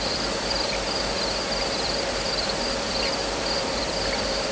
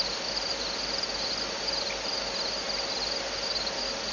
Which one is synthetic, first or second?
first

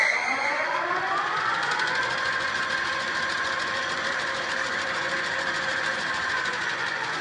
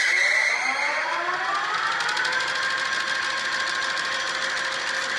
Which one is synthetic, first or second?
first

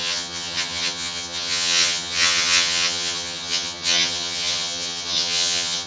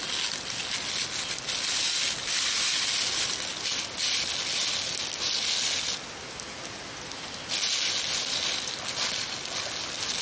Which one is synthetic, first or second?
first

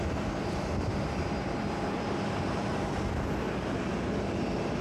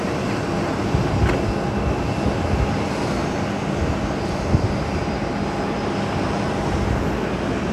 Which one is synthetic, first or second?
first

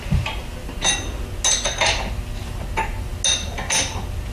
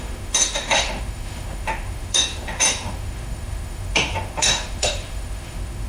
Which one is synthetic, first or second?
second